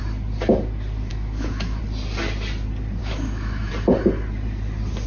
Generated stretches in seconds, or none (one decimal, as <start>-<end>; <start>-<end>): 1.1-1.8; 3.0-3.7